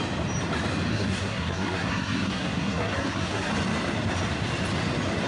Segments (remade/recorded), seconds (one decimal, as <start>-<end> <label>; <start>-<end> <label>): 0.0-0.9 recorded; 0.9-3.5 remade; 3.5-5.3 recorded

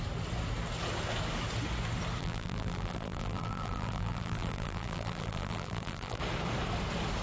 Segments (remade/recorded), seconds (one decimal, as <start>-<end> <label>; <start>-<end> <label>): 0.0-2.2 recorded; 2.2-6.2 remade; 6.2-7.2 recorded